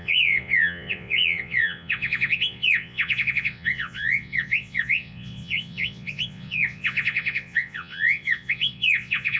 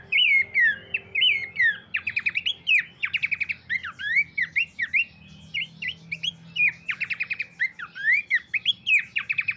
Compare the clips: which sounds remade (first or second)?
first